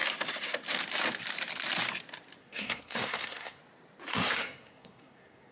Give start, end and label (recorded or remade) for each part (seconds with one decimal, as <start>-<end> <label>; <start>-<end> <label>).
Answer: 0.0-2.4 recorded; 2.4-3.6 remade; 3.6-4.1 recorded; 4.1-5.5 remade

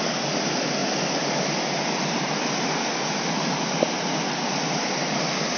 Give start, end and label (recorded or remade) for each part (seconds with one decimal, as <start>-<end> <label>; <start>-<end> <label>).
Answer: 0.0-5.6 recorded

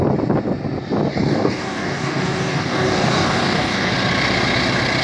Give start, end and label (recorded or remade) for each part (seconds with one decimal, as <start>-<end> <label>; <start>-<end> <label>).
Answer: 0.0-1.1 recorded; 1.1-3.9 remade; 3.9-5.0 recorded

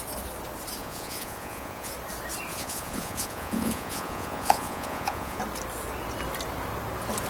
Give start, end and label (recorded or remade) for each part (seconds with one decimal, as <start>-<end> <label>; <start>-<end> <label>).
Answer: 0.0-0.8 recorded; 0.8-1.9 remade; 1.9-2.5 recorded; 2.5-5.4 remade; 5.4-7.3 recorded

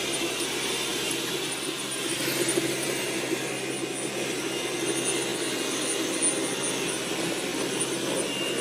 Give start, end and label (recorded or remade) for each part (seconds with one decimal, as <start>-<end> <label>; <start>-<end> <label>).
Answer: 0.0-0.9 recorded; 0.9-3.4 remade; 3.4-8.6 recorded

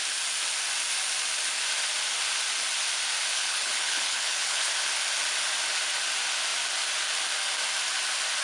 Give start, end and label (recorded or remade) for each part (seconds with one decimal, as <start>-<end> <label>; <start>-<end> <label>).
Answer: 0.0-3.3 recorded; 3.3-4.7 remade; 4.7-8.4 recorded

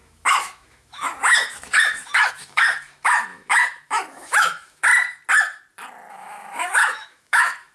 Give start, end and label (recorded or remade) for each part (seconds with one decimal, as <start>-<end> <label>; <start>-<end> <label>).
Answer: 0.0-4.9 remade; 4.9-6.1 recorded; 6.1-7.7 remade

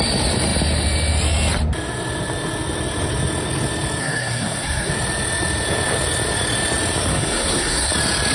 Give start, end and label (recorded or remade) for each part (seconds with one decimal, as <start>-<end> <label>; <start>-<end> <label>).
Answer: 0.0-4.0 recorded; 4.0-4.9 remade; 4.9-7.1 recorded; 7.1-7.9 remade; 7.9-8.3 recorded